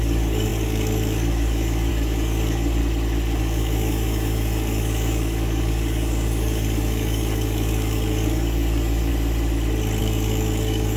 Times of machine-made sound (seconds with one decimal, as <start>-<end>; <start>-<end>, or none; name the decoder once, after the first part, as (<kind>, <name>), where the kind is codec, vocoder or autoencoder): 0.0-2.8 (codec, DAC); 3.4-9.1; 10.0-11.0